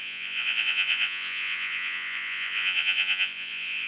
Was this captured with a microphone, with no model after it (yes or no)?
no